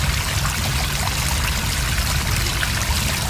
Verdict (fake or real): real